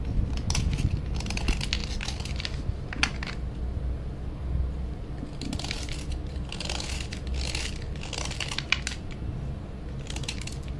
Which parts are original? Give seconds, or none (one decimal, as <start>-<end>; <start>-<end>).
0.0-10.8